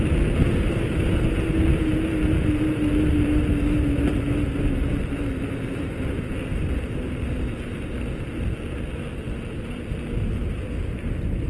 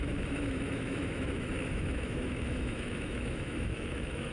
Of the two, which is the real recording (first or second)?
first